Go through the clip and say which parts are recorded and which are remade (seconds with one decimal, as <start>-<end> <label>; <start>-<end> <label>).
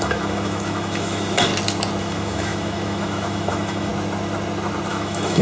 0.0-1.5 remade; 1.5-2.0 recorded; 2.0-3.9 remade; 3.9-4.9 recorded; 4.9-5.4 remade